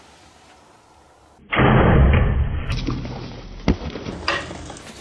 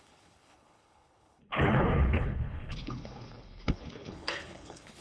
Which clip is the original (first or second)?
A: first